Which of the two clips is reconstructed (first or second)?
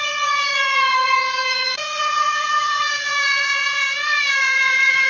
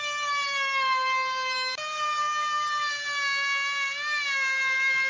first